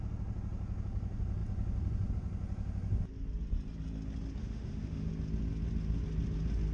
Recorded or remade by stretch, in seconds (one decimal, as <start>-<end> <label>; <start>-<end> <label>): 0.0-4.4 recorded; 4.4-5.1 remade; 5.1-6.7 recorded